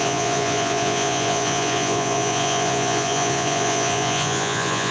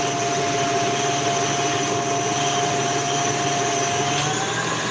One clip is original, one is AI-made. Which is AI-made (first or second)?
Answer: first